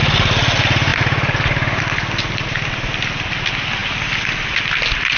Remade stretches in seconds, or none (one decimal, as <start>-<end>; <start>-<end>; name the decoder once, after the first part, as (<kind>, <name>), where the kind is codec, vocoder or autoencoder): none